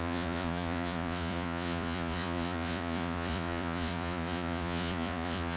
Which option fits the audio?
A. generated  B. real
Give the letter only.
A